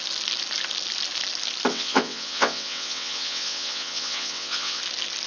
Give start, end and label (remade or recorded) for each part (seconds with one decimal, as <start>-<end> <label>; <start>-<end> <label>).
0.0-1.7 recorded; 1.7-4.8 remade; 4.8-5.3 recorded